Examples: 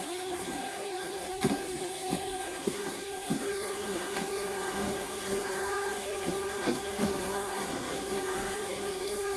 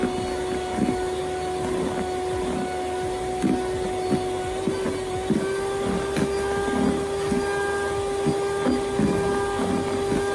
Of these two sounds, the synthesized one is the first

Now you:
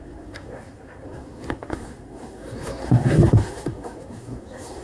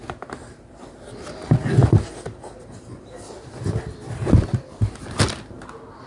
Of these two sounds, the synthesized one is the first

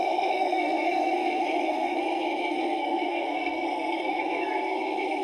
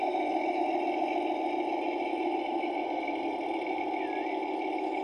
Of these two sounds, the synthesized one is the first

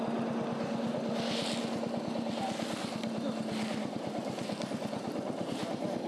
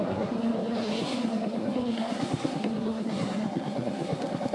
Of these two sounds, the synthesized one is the second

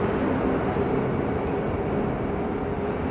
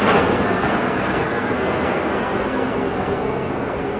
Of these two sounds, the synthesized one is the second